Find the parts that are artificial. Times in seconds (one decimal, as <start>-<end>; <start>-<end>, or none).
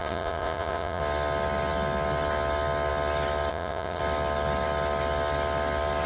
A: 0.0-1.0; 3.5-4.0